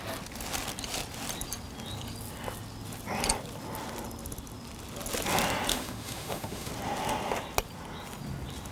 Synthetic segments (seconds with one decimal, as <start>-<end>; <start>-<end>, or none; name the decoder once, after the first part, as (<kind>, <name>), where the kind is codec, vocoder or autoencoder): 5.7-6.7 (autoencoder, DAC-VAE)